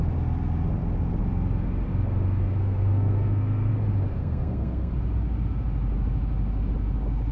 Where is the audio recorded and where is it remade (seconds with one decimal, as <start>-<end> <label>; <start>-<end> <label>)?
0.0-2.6 recorded; 2.6-3.7 remade; 3.7-4.2 recorded; 4.2-4.9 remade; 4.9-7.3 recorded